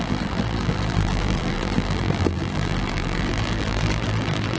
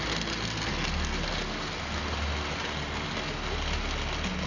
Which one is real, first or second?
second